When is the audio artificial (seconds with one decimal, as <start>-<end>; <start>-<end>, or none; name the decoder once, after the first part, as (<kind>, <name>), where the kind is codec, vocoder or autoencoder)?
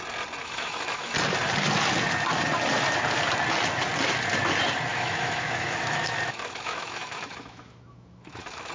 0.4-1.1 (autoencoder, DAC-VAE); 4.9-8.7